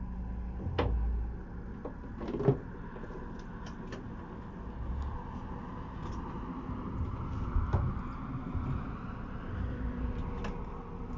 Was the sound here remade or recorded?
recorded